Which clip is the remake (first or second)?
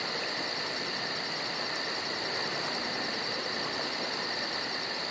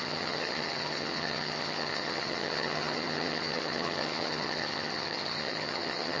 second